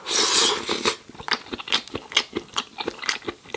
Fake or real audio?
real